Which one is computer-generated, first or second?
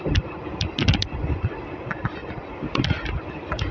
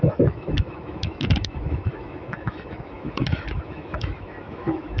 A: second